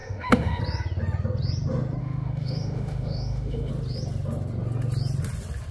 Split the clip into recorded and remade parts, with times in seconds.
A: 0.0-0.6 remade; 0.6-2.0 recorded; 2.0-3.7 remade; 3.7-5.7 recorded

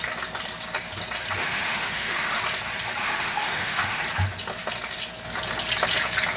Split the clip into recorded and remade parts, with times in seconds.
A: 0.0-1.4 recorded; 1.4-2.4 remade; 2.4-3.0 recorded; 3.0-4.0 remade; 4.0-6.4 recorded

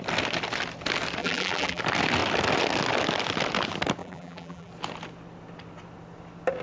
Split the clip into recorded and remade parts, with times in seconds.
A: 0.0-1.2 recorded; 1.2-1.8 remade; 1.8-4.0 recorded; 4.0-4.7 remade; 4.7-6.6 recorded

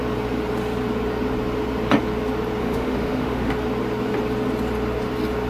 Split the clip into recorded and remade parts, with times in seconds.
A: 0.0-2.6 recorded; 2.6-3.5 remade; 3.5-5.5 recorded